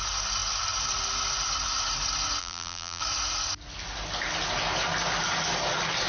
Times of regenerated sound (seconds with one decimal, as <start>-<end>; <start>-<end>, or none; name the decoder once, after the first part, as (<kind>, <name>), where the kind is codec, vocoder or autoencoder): 2.4-3.0 (vocoder, BigVGAN v2)